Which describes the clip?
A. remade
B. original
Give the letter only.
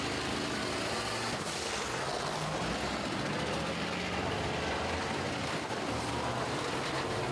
B